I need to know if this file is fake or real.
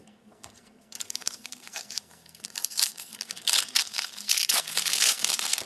fake